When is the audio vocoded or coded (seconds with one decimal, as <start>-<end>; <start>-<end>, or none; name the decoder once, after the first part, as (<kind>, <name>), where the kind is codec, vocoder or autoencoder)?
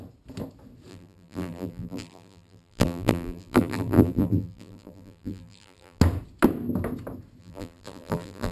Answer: 0.9-6.0 (vocoder, BigVGAN v2); 7.4-8.5